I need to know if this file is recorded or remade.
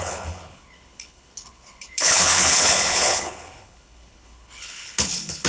remade